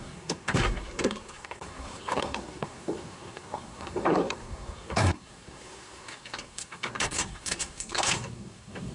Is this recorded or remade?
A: remade